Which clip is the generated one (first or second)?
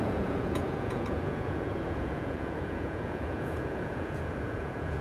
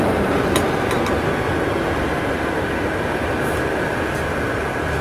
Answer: first